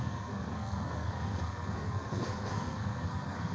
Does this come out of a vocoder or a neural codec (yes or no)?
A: yes